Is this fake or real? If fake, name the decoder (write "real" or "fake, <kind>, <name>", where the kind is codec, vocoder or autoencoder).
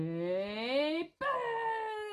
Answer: real